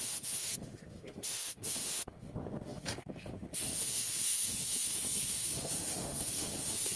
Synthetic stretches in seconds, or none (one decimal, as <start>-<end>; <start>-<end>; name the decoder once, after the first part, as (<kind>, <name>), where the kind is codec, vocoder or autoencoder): 0.0-7.0 (autoencoder, DAC-VAE)